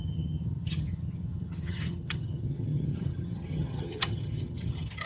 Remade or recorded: remade